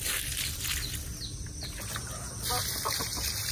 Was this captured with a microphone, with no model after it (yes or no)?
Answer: yes